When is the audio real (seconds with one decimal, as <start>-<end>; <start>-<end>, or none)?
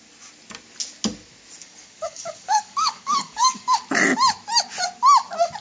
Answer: 0.0-1.6; 3.8-5.6